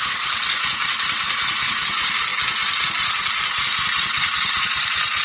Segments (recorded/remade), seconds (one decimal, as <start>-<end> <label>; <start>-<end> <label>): 0.0-5.2 recorded

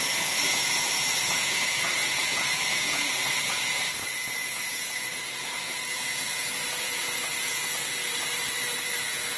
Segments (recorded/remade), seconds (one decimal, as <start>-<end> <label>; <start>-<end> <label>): 0.0-8.0 remade; 8.0-9.0 recorded; 9.0-9.4 remade

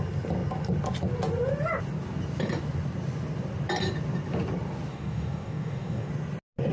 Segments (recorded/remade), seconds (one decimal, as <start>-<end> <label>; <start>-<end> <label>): 0.0-4.9 recorded; 4.9-6.1 remade; 6.1-6.7 recorded